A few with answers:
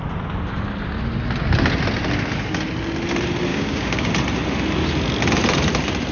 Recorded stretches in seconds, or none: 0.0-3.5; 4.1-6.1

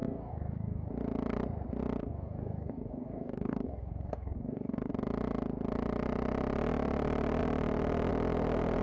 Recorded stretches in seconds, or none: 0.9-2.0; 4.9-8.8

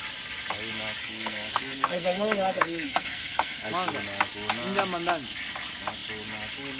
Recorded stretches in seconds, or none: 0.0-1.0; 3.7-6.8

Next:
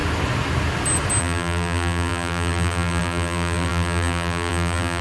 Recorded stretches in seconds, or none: 0.0-1.2

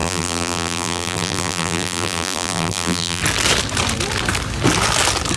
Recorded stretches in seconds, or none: 3.2-5.4

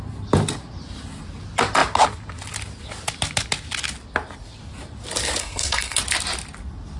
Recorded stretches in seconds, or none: 0.0-5.4; 6.0-7.0

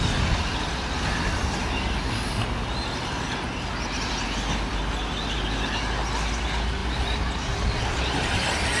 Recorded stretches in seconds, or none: 0.0-8.8